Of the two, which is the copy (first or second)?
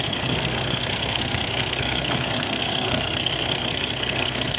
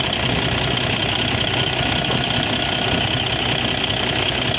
first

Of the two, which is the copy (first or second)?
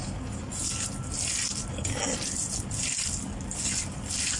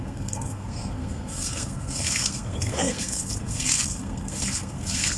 second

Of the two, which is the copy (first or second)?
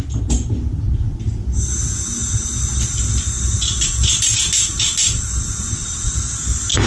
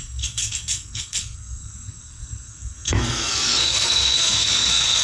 second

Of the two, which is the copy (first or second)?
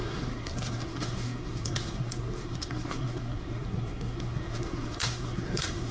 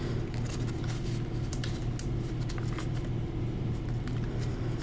first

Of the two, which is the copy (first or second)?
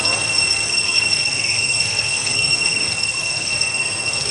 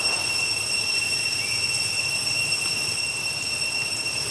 first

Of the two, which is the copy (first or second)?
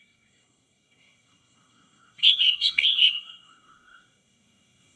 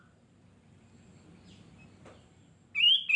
first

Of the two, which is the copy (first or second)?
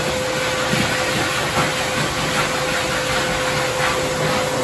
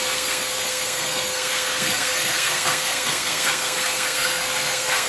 second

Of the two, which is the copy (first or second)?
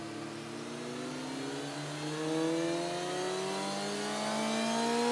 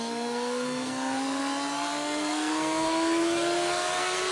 second